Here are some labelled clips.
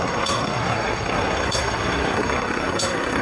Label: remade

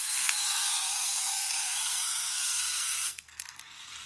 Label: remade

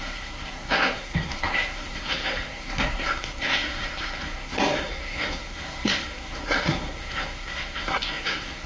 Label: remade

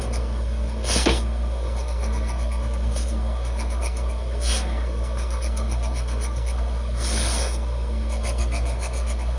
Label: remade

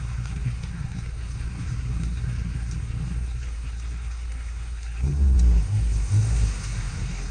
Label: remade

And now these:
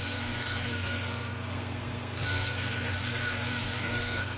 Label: remade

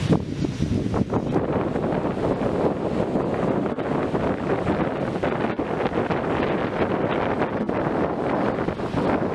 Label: recorded